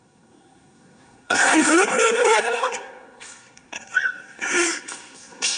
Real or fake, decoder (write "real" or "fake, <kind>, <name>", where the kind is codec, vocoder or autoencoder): fake, codec, SNAC